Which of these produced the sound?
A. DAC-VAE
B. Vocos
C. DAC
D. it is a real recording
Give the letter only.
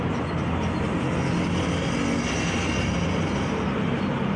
D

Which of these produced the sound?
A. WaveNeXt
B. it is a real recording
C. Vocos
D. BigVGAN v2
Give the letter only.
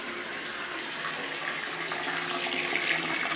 B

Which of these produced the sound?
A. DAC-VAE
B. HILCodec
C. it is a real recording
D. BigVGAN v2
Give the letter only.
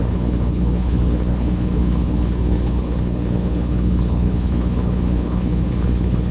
B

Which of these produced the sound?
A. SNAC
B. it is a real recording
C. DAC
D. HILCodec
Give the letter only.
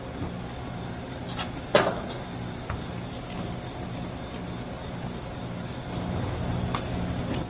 B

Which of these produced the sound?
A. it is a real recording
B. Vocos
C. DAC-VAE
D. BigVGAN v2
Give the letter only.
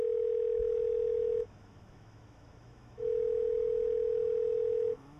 C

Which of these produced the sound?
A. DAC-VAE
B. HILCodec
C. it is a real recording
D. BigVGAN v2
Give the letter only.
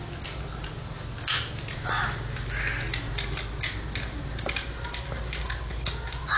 C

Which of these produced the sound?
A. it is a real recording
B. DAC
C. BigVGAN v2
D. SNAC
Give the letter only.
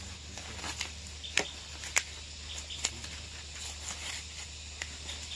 A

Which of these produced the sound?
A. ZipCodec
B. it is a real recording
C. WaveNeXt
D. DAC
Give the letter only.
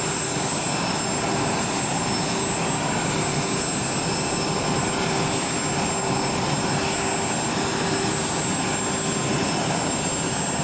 B